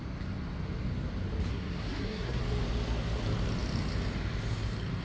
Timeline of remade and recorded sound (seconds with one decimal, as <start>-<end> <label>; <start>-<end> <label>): 0.0-1.5 recorded; 1.5-2.4 remade; 2.4-5.0 recorded